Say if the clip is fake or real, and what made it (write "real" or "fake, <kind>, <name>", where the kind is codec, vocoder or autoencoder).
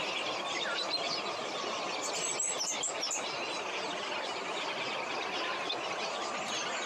real